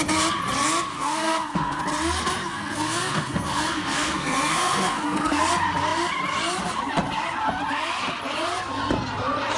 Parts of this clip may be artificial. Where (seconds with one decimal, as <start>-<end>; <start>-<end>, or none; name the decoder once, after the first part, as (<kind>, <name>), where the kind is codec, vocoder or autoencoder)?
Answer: 0.9-1.8 (codec, SNAC); 2.4-5.4